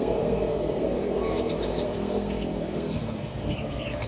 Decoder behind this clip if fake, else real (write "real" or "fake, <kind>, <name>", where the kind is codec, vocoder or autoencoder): fake, codec, SNAC